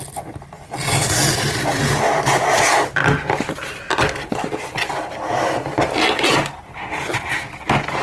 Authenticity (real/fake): real